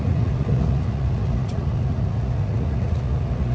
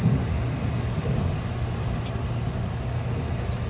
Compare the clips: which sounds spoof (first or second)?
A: first